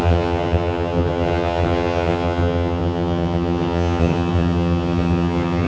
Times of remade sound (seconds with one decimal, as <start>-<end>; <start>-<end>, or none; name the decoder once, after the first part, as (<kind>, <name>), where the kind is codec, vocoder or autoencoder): 0.0-5.7 (vocoder, HiFi-GAN)